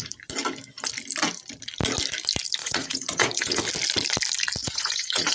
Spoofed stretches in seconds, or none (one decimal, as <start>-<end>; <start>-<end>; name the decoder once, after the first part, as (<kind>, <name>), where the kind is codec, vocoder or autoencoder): 2.6-3.6 (vocoder, Vocos); 4.6-5.3